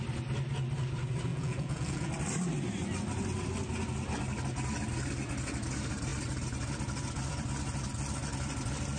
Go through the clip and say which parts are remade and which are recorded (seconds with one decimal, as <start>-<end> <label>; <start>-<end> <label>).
0.0-1.3 recorded; 1.3-2.1 remade; 2.1-9.0 recorded